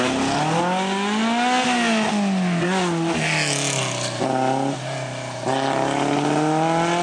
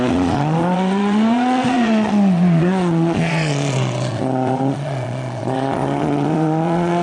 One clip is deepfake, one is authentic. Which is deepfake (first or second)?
second